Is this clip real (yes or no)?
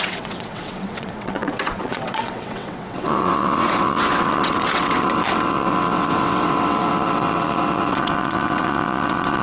no